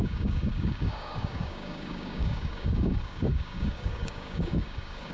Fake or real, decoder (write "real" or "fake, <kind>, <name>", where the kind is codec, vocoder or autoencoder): fake, codec, DAC